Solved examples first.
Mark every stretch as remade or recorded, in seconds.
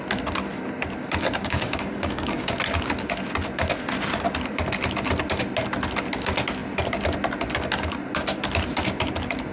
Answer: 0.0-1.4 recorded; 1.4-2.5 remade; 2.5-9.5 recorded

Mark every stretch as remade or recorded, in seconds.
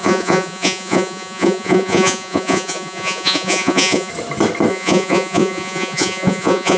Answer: 0.0-4.1 remade; 4.1-4.7 recorded; 4.7-6.8 remade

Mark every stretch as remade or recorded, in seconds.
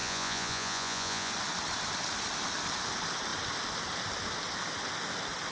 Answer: 0.0-1.3 remade; 1.3-5.5 recorded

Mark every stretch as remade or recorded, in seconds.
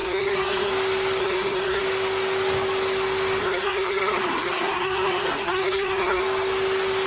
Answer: 0.0-0.7 remade; 0.7-1.2 recorded; 1.2-1.8 remade; 1.8-3.4 recorded; 3.4-6.2 remade; 6.2-7.1 recorded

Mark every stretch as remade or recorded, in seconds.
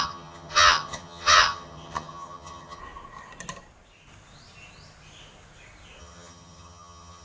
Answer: 0.0-2.8 remade; 2.8-6.0 recorded; 6.0-7.2 remade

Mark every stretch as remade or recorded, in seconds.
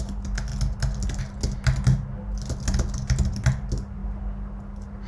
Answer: 0.0-5.1 recorded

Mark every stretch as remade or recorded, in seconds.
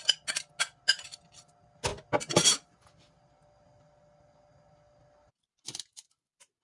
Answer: 0.0-6.6 recorded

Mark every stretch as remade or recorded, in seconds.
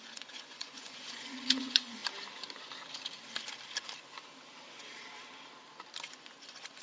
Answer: 0.0-2.0 remade; 2.0-6.1 recorded; 6.1-6.8 remade